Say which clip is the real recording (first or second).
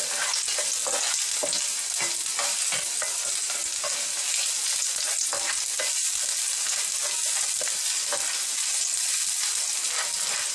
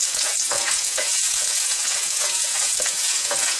first